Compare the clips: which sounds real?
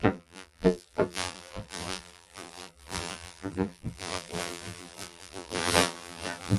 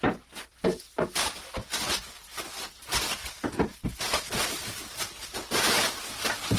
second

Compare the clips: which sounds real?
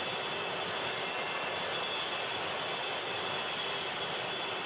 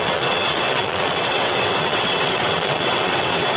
first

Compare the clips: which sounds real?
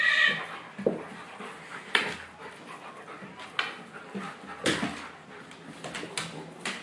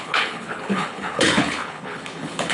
first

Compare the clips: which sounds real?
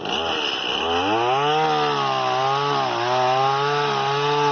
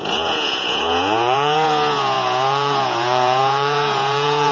first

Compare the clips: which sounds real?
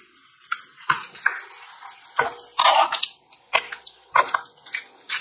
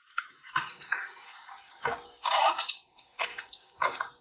first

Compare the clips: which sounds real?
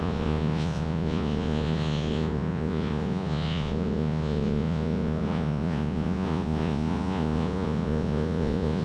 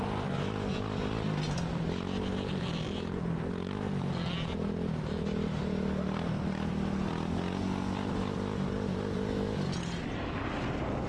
second